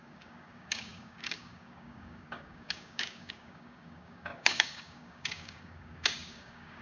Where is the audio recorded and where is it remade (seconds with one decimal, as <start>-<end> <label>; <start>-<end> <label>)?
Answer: 0.0-6.8 remade